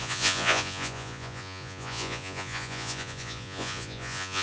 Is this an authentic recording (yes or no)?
no